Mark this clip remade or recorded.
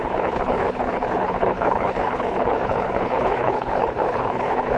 remade